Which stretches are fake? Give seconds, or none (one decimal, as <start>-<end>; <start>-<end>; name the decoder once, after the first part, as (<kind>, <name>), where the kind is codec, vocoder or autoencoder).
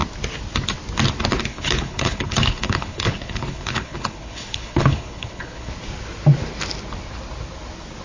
1.5-5.7 (codec, HILCodec)